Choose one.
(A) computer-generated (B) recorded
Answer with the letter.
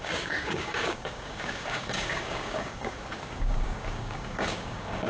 A